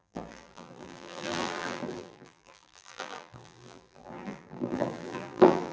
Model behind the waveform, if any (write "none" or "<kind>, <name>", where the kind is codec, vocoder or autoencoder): vocoder, BigVGAN v2